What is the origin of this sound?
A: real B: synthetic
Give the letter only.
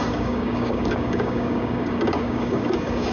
B